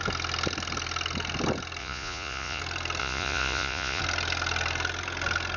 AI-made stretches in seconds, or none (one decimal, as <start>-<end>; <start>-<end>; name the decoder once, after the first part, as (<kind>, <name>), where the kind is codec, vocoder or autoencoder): 1.8-2.6 (vocoder, Vocos); 3.0-4.0

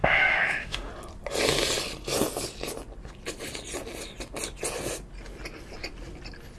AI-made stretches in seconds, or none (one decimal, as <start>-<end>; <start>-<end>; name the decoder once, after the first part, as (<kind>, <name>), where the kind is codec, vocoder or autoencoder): 0.0-0.9 (autoencoder, DAC-VAE)